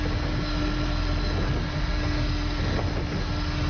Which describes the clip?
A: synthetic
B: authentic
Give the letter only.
B